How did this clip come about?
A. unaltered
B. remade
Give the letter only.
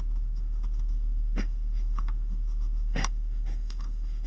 B